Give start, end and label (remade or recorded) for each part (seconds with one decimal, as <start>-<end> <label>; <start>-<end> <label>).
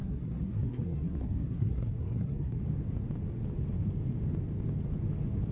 0.0-2.6 remade; 2.6-5.5 recorded